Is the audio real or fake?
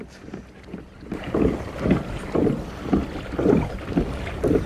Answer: real